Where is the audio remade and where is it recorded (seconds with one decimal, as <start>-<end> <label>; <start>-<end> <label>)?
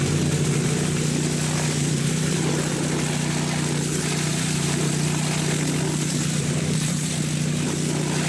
0.0-1.8 recorded; 1.8-2.5 remade; 2.5-4.3 recorded; 4.3-4.9 remade; 4.9-6.4 recorded; 6.4-7.1 remade; 7.1-8.3 recorded